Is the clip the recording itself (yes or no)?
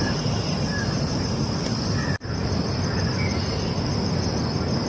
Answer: yes